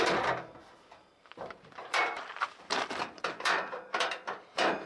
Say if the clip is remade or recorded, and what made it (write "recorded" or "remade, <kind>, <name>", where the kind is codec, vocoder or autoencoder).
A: remade, vocoder, BigVGAN v2